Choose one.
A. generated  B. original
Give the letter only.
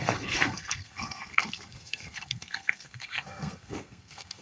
A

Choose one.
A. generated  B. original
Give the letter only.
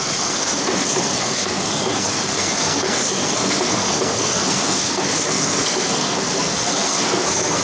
A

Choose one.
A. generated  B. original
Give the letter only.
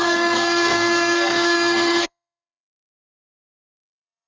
A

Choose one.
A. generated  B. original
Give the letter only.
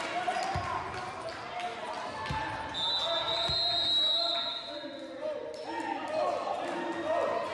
B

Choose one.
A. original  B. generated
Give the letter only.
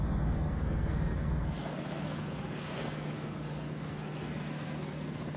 B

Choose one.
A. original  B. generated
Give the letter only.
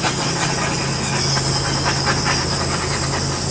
A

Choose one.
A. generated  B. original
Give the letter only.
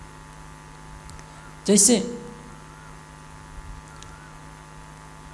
B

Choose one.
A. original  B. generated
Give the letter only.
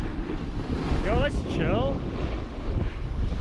A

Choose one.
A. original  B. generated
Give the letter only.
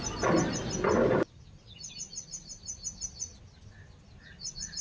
A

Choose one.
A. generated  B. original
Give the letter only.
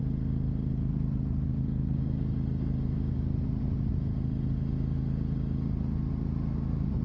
B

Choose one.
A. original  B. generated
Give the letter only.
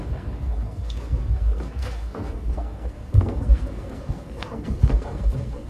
B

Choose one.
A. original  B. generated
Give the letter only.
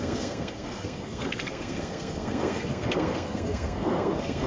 B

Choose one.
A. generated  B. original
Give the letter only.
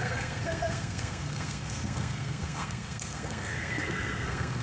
A